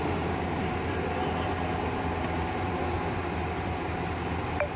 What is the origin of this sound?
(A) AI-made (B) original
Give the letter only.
B